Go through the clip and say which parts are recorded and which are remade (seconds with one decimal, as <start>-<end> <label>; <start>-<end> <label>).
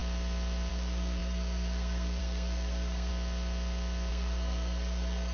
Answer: 0.0-0.7 recorded; 0.7-3.1 remade; 3.1-4.1 recorded; 4.1-5.3 remade